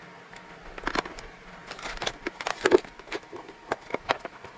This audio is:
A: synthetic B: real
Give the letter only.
B